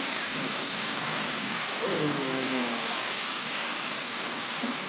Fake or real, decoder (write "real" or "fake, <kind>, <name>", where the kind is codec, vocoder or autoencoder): fake, codec, DAC